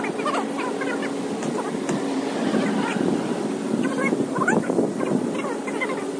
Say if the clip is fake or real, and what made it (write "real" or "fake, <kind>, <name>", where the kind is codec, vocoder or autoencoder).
real